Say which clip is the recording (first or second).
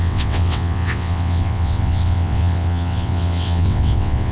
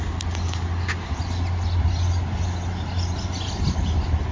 second